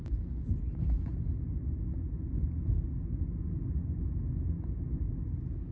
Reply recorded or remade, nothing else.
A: recorded